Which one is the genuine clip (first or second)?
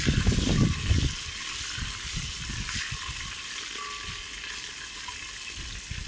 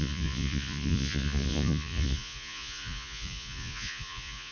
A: first